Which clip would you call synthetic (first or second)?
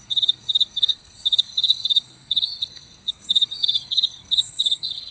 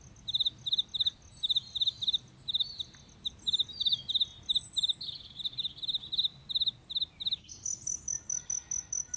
first